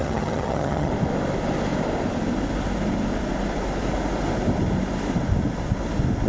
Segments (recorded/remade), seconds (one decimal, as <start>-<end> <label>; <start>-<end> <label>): 0.0-0.9 remade; 0.9-6.3 recorded